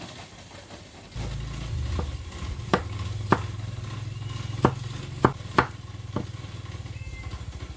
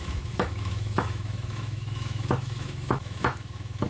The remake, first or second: second